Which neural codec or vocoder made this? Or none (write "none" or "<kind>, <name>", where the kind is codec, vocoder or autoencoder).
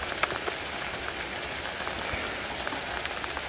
none